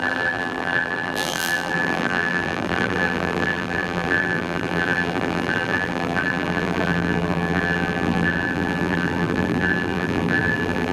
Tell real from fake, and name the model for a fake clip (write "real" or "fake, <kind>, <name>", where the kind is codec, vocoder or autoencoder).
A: fake, vocoder, BigVGAN v2